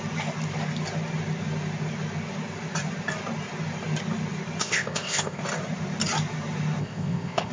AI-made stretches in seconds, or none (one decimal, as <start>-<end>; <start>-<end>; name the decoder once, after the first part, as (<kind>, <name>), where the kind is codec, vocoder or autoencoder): 4.6-5.4 (codec, ZipCodec); 6.8-7.5